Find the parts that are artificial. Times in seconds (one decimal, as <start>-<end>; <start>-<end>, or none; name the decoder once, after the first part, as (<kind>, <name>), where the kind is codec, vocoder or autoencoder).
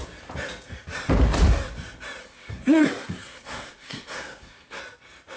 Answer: 2.2-4.8 (codec, SNAC)